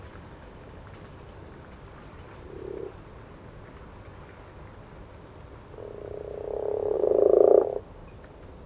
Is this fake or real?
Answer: real